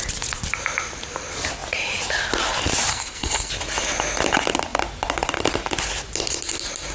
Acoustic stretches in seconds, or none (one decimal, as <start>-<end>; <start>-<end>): 0.0-2.9; 3.5-6.9